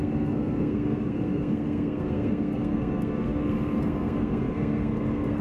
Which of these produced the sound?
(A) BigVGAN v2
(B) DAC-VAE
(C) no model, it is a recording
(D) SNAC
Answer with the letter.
D